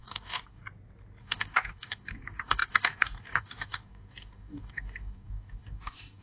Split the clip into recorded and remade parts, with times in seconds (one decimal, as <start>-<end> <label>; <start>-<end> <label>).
0.0-0.6 remade; 0.6-1.2 recorded; 1.2-6.2 remade